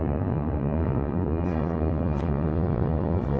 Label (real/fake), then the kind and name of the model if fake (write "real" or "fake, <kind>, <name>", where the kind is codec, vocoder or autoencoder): fake, vocoder, Vocos